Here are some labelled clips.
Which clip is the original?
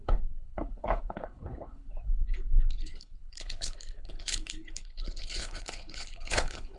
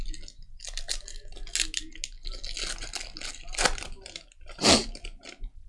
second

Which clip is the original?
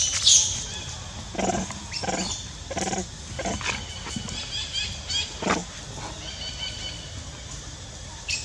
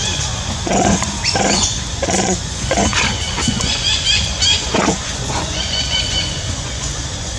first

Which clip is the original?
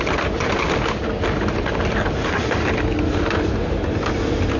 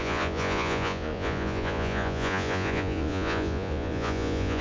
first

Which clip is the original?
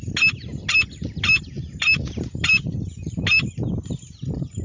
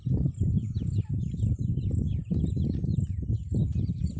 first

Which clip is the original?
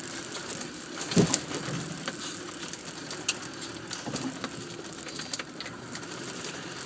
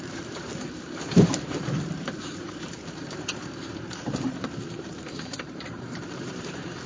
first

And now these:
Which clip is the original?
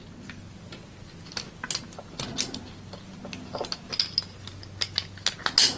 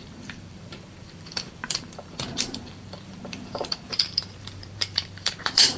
first